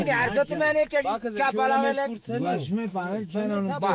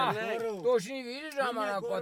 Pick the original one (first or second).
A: second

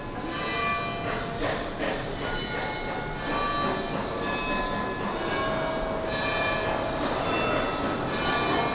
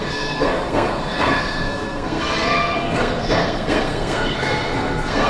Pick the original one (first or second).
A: first